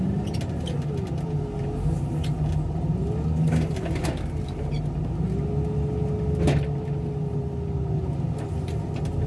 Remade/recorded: recorded